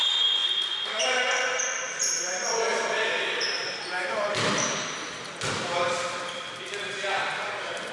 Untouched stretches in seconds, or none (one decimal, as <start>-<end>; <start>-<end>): 0.0-7.9